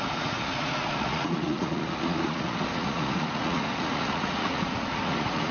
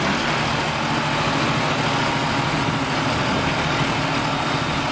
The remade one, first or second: first